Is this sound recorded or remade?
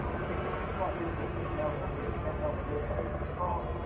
recorded